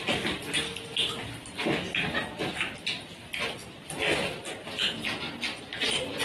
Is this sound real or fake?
real